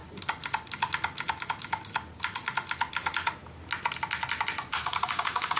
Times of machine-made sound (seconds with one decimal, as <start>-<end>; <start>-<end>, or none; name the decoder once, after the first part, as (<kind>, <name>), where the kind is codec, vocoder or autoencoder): 4.7-5.6 (codec, DAC)